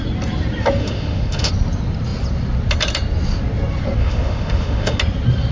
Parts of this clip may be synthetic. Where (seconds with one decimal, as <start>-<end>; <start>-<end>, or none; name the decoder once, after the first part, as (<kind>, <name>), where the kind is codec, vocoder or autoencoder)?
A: 0.8-1.5 (autoencoder, DAC-VAE); 4.0-5.0